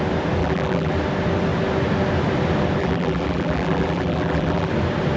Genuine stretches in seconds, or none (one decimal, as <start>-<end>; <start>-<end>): 0.0-0.4; 0.9-2.8; 4.7-5.2